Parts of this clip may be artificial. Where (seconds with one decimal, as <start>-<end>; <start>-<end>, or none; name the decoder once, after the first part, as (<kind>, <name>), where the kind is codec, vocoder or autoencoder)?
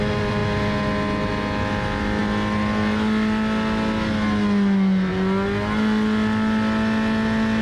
none